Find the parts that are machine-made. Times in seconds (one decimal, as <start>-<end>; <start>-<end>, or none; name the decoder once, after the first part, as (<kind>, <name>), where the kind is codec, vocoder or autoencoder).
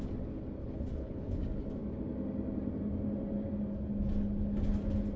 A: 0.6-1.4 (codec, HILCodec)